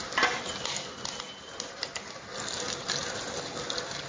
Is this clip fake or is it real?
real